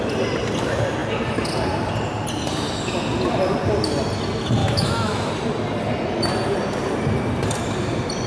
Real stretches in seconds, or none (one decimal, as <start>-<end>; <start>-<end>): 0.0-4.6; 5.3-8.3